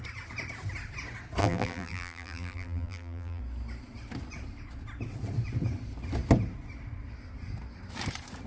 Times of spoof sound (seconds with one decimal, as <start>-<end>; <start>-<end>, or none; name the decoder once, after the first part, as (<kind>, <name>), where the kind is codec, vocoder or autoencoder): 1.4-3.4 (vocoder, BigVGAN v2)